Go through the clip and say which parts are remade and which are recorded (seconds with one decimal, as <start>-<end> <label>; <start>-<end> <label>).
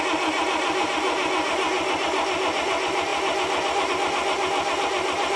0.0-5.4 recorded